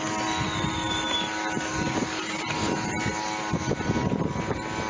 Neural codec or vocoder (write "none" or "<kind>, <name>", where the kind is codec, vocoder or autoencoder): none